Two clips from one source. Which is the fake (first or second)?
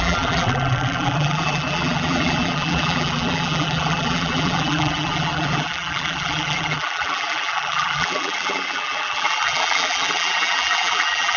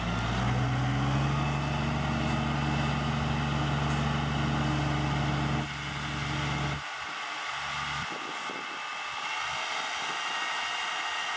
first